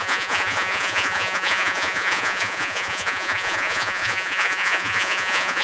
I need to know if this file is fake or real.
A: fake